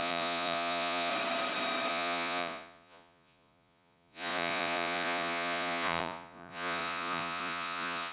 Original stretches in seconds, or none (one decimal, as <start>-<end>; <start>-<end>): 1.1-1.9